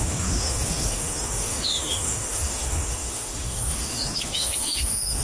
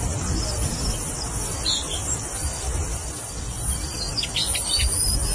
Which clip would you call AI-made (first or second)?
first